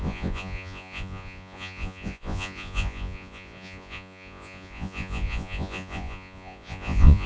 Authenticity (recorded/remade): remade